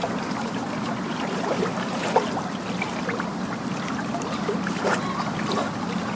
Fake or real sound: real